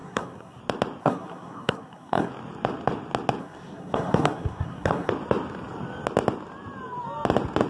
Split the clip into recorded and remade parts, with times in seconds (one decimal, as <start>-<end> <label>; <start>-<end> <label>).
0.0-0.6 remade; 0.6-1.0 recorded; 1.0-2.3 remade; 2.3-3.4 recorded; 3.4-5.1 remade; 5.1-7.7 recorded